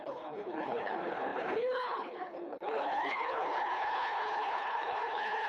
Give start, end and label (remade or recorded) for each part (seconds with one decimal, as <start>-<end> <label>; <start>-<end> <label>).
0.0-5.5 remade